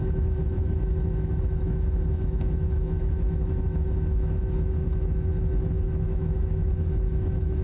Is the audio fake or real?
fake